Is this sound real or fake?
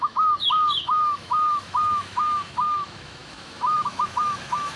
fake